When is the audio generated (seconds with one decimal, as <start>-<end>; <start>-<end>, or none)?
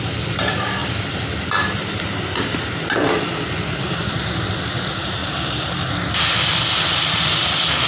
none